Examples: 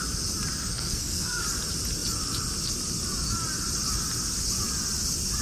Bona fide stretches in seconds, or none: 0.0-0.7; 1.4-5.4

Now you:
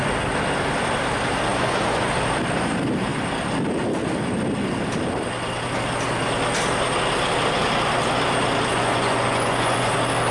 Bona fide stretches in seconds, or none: 0.0-1.5; 2.1-8.7; 9.9-10.3

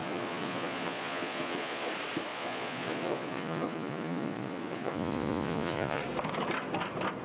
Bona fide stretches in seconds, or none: 1.9-2.3; 6.0-7.2

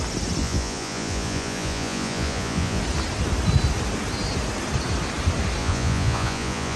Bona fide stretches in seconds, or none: 0.0-0.4; 2.8-5.6

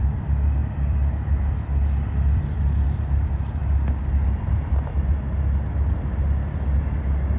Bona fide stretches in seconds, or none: 0.0-0.6; 1.1-7.4

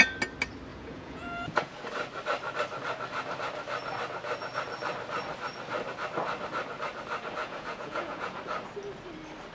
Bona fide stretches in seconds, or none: 0.0-0.7; 1.8-7.4; 8.4-9.5